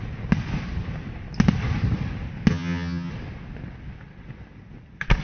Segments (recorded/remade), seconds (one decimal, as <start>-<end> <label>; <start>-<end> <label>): 0.0-2.5 recorded; 2.5-3.1 remade; 3.1-5.2 recorded